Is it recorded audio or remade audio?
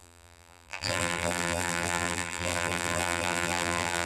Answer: remade